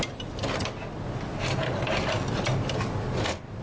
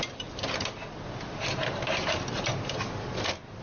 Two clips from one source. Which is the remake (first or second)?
second